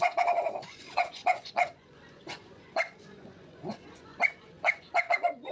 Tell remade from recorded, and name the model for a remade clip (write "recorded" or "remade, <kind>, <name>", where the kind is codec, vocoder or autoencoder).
remade, vocoder, Vocos